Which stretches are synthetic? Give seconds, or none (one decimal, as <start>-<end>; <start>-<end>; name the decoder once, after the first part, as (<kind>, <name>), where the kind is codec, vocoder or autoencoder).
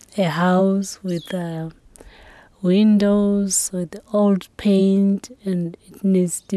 none